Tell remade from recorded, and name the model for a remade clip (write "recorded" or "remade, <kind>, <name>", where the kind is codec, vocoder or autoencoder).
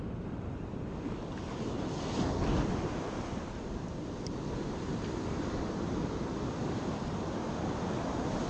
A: recorded